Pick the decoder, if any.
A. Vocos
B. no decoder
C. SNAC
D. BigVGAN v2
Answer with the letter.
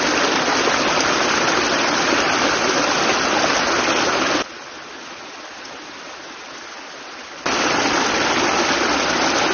B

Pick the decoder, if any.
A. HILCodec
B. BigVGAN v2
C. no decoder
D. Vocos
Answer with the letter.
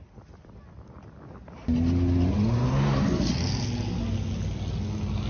C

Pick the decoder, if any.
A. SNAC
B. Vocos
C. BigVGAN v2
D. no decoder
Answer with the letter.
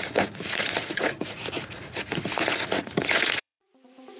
B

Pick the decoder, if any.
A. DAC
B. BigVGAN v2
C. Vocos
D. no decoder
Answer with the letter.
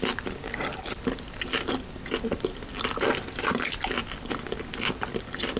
D